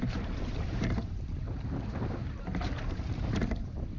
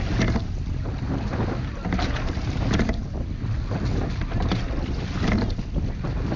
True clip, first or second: second